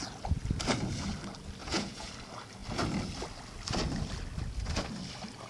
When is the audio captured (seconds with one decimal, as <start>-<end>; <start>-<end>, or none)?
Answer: 0.0-1.6; 2.1-5.5